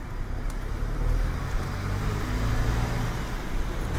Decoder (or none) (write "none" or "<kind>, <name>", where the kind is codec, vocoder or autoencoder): none